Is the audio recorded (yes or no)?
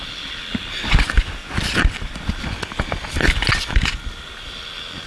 yes